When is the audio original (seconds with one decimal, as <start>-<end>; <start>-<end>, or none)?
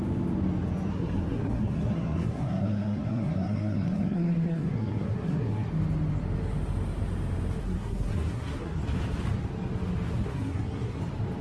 0.0-0.9; 5.7-7.6; 8.8-10.1; 11.0-11.4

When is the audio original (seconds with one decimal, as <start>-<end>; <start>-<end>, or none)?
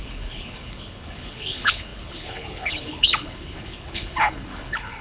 none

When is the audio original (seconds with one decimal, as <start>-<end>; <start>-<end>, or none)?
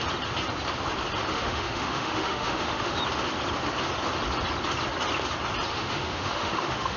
0.0-1.3; 3.0-5.7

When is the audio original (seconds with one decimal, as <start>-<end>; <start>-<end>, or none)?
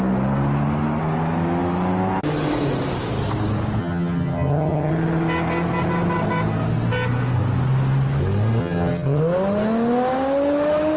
0.0-3.8; 4.9-8.6; 9.2-11.0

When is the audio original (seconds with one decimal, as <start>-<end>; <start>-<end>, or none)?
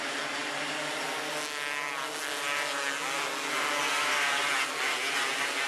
0.0-5.7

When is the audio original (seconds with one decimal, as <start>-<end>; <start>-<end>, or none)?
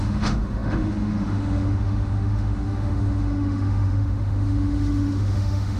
none